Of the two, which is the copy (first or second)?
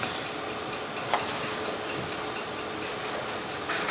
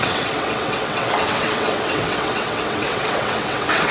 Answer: second